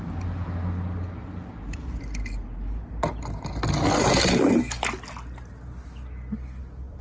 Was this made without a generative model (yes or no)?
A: yes